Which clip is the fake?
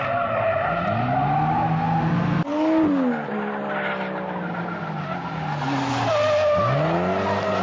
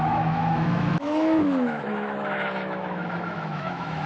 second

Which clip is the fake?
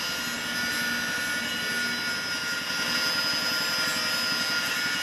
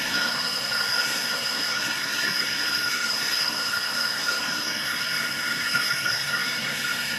second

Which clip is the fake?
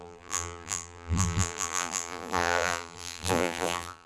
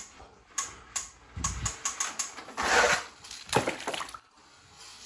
first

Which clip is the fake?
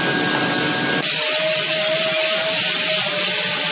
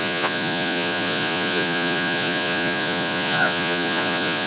second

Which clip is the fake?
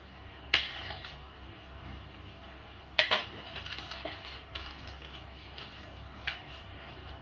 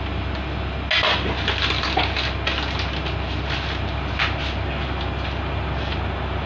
first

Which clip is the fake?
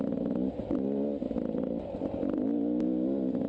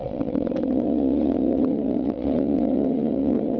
second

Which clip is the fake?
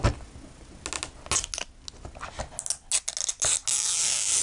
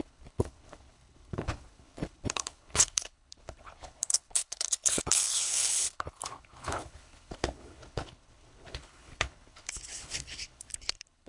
second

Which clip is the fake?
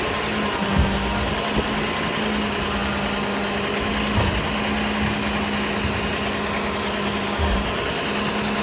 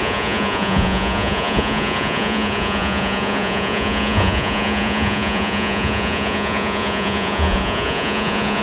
second